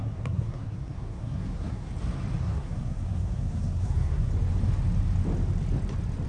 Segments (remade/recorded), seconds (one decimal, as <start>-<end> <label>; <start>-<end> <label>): 0.0-1.9 remade; 1.9-2.4 recorded; 2.4-4.3 remade; 4.3-6.3 recorded